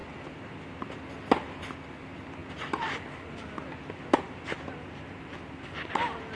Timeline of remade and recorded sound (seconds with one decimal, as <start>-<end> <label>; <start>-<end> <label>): 0.0-6.3 recorded